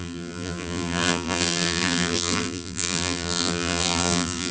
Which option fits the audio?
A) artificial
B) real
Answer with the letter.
A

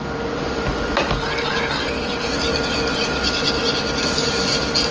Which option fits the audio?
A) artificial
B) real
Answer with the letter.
B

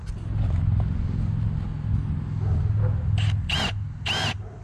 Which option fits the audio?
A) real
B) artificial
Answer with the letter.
A